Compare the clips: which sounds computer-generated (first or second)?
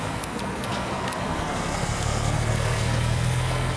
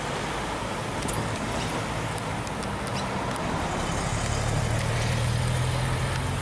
first